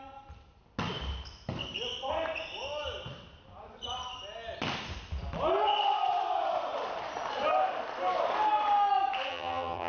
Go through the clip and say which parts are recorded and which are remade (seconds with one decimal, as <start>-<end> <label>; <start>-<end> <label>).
0.0-9.3 recorded; 9.3-9.9 remade